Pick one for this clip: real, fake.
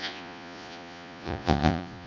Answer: fake